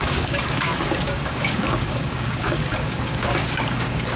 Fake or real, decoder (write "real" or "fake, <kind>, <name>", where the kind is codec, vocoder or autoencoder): fake, codec, DAC